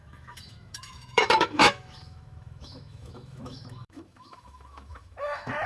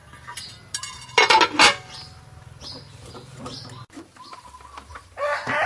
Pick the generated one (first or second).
first